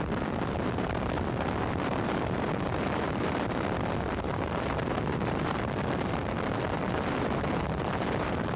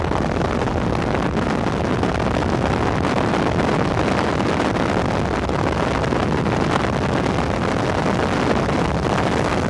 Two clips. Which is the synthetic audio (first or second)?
first